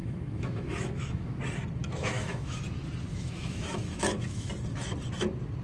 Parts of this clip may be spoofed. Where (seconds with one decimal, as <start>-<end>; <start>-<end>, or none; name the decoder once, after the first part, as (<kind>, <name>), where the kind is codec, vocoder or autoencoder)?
0.0-1.4 (autoencoder, DAC-VAE); 1.8-2.6; 3.1-4.5